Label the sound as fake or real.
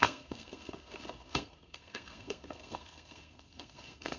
fake